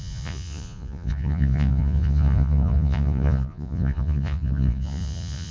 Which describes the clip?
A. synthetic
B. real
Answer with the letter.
A